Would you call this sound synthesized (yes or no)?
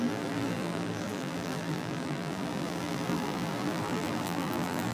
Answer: yes